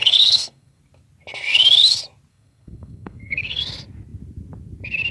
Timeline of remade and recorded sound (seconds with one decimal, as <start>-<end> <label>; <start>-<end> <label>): 0.0-0.8 remade; 0.8-2.3 recorded; 2.3-3.6 remade; 3.6-5.1 recorded